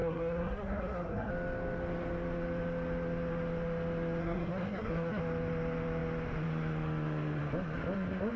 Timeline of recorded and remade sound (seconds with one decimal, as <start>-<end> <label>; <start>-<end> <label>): 0.0-1.3 remade; 1.3-4.2 recorded; 4.2-5.2 remade; 5.2-8.4 recorded

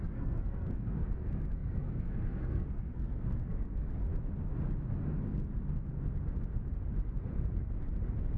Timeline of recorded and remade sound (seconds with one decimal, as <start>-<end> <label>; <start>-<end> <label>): 0.0-4.1 remade; 4.1-8.4 recorded

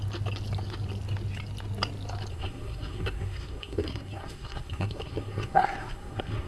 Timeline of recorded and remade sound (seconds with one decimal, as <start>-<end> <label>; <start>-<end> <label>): 0.0-2.3 recorded; 2.3-6.5 remade

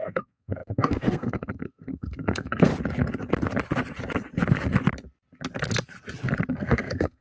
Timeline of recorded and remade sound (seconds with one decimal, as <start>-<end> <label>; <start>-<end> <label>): 0.0-2.7 remade; 2.7-6.5 recorded; 6.5-7.2 remade

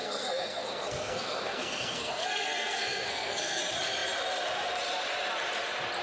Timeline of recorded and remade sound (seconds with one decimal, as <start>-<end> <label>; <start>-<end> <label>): 0.0-3.6 remade; 3.6-6.0 recorded

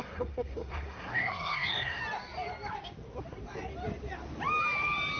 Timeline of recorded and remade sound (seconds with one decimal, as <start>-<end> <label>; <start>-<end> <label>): 0.0-2.0 remade; 2.0-5.2 recorded

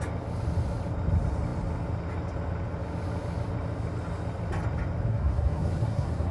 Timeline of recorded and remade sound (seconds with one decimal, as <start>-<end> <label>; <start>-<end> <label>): 0.0-5.1 recorded; 5.1-6.3 remade